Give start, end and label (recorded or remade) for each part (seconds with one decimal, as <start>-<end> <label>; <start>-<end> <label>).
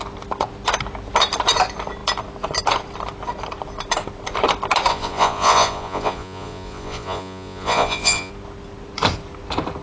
0.0-4.9 recorded; 4.9-8.3 remade; 8.3-9.8 recorded